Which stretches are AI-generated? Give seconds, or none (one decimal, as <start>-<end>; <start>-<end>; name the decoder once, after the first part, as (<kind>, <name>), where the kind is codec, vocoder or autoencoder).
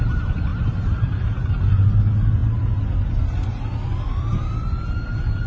none